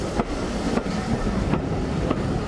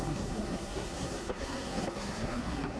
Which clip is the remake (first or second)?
second